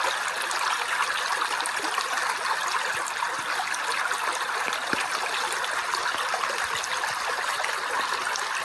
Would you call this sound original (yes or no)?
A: yes